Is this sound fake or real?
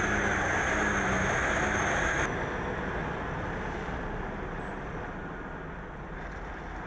real